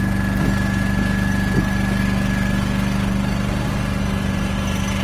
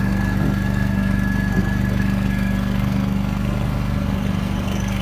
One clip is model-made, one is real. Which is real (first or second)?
first